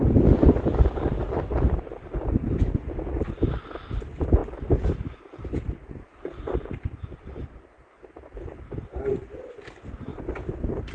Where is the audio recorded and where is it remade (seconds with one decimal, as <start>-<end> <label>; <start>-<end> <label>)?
0.0-4.4 recorded; 4.4-9.5 remade; 9.5-10.1 recorded; 10.1-10.9 remade